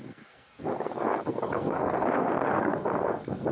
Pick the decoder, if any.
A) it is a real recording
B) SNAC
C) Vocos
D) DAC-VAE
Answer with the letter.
B